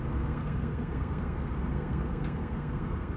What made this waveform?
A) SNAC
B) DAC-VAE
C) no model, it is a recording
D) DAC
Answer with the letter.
A